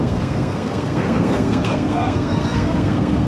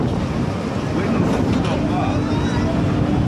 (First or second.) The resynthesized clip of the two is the first